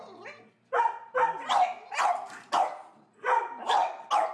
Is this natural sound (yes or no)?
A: yes